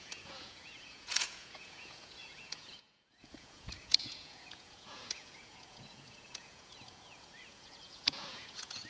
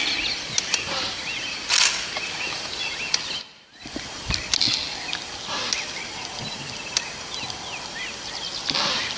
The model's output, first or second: first